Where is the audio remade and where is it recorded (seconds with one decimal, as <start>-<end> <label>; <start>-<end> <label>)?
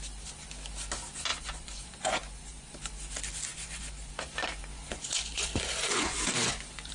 0.0-1.3 recorded; 1.3-2.7 remade; 2.7-3.5 recorded; 3.5-4.1 remade; 4.1-4.6 recorded; 4.6-6.9 remade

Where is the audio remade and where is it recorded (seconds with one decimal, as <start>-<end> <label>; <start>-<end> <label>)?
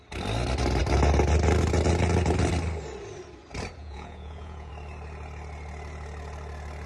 0.0-3.8 recorded; 3.8-4.7 remade; 4.7-6.9 recorded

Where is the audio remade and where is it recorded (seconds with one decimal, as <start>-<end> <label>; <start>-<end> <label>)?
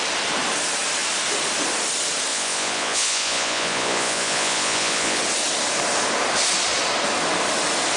0.0-2.3 recorded; 2.3-5.2 remade; 5.2-8.0 recorded